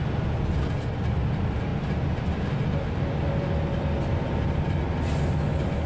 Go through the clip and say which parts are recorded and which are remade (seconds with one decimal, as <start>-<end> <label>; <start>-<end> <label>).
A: 0.0-5.9 recorded